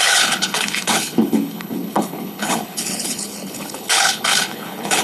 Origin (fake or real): fake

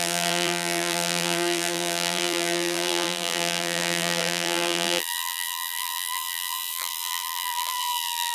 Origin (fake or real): fake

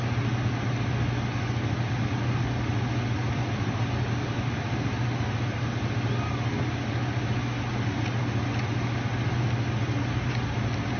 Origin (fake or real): real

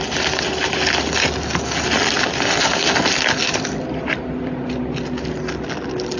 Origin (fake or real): real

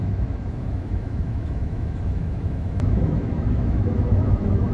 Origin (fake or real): fake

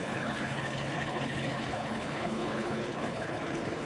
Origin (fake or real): fake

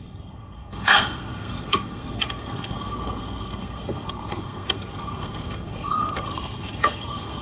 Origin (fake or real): fake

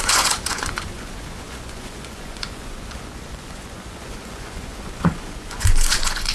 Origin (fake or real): fake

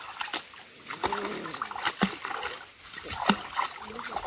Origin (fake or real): real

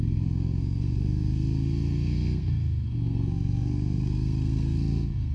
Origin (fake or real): fake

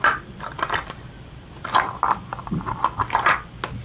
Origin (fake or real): real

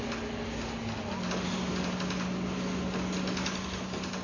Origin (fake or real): real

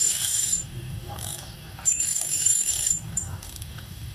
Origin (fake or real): fake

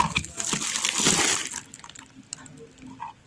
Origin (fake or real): real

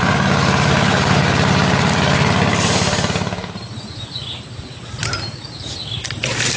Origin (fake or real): fake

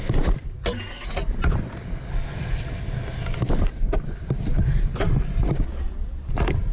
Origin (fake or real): real